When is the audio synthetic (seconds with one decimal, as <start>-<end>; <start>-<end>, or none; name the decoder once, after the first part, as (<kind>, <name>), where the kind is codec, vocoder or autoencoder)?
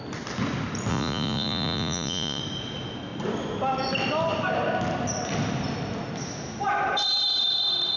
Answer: 0.9-2.4 (vocoder, Vocos)